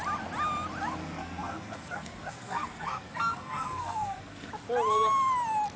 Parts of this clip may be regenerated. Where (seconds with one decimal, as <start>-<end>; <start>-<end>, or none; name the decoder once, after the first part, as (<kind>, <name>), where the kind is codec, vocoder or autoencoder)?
1.0-4.5 (codec, SNAC)